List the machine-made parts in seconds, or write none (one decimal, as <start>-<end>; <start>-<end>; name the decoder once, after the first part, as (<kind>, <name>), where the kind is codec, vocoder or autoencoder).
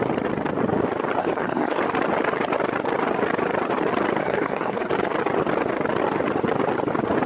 1.2-1.8 (codec, SNAC); 4.2-4.9